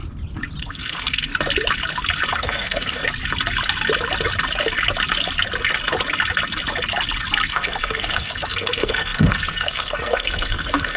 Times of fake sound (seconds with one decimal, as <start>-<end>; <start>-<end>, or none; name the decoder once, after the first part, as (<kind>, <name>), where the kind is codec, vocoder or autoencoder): 0.6-1.3 (codec, SNAC); 2.3-3.0; 7.5-11.0